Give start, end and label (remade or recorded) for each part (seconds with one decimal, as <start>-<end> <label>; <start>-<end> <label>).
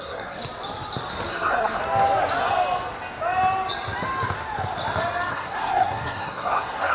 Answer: 0.0-0.4 remade; 0.4-1.3 recorded; 1.3-1.8 remade; 1.8-5.3 recorded; 5.3-6.9 remade